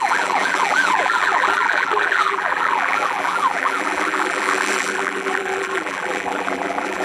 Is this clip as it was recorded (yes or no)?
no